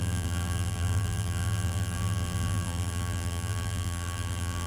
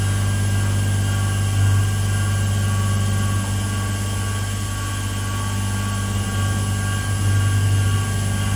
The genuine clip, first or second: second